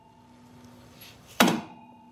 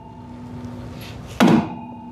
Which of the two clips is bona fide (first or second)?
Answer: second